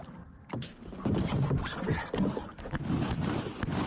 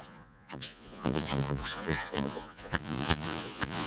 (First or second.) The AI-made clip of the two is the second